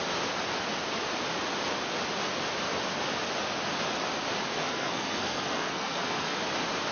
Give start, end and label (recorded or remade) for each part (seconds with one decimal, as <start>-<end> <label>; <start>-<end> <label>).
0.0-4.6 recorded; 4.6-6.4 remade; 6.4-6.9 recorded

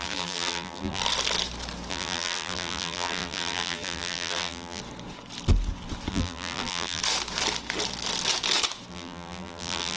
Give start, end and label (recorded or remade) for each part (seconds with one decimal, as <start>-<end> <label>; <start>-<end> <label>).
0.0-1.0 remade; 1.0-1.9 recorded; 1.9-4.8 remade; 4.8-6.1 recorded; 6.1-7.0 remade; 7.0-8.9 recorded; 8.9-10.0 remade

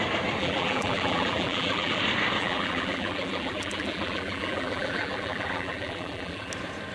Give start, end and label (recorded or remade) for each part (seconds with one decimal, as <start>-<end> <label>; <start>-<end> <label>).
0.0-0.4 recorded; 0.4-2.0 remade; 2.0-2.4 recorded; 2.4-6.5 remade; 6.5-6.9 recorded

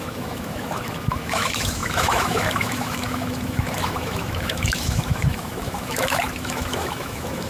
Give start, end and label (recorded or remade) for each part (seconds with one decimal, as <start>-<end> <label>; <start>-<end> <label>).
0.0-7.5 remade

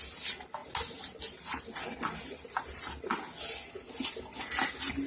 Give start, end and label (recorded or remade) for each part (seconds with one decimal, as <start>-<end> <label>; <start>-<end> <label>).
0.0-5.1 recorded

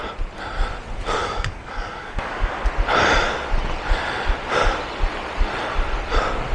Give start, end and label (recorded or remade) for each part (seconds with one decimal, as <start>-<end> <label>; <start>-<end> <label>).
0.0-1.2 recorded; 1.2-2.6 remade; 2.6-6.5 recorded

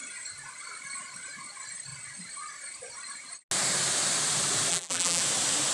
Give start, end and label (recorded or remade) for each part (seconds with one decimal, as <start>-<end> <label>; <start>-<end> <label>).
0.0-4.7 recorded; 4.7-5.2 remade; 5.2-5.7 recorded

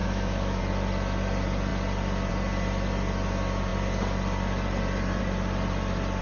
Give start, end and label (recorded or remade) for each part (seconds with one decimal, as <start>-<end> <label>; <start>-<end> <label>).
0.0-0.6 remade; 0.6-6.2 recorded